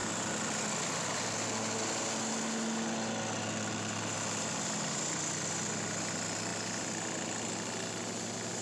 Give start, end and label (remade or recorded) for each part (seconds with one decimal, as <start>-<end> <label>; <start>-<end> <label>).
0.0-8.6 recorded